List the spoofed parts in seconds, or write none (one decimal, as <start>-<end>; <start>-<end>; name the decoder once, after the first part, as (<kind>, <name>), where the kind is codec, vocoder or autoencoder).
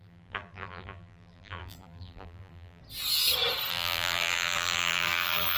0.0-2.8 (vocoder, BigVGAN v2); 3.7-5.6